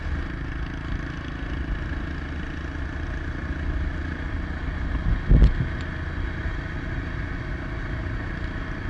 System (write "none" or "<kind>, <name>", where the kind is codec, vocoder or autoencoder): none